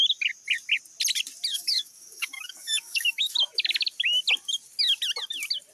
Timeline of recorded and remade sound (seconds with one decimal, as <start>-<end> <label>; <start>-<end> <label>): 0.0-1.5 recorded; 1.5-3.3 remade; 3.3-5.7 recorded